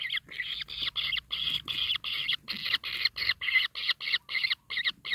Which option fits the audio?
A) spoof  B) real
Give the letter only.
B